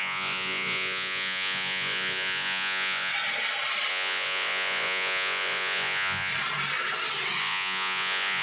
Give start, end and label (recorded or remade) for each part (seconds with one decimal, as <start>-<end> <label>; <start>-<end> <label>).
0.0-3.1 remade; 3.1-3.9 recorded; 3.9-6.3 remade; 6.3-7.4 recorded; 7.4-8.4 remade